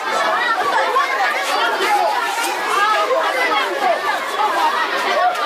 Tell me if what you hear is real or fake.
fake